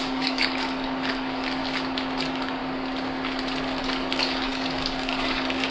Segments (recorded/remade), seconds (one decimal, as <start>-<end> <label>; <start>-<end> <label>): 0.0-1.6 remade; 1.6-2.2 recorded; 2.2-2.6 remade; 2.6-3.8 recorded; 3.8-5.7 remade